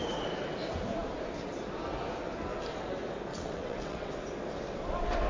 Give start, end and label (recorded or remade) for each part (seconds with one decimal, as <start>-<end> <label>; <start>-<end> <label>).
0.0-3.3 recorded; 3.3-4.1 remade; 4.1-5.3 recorded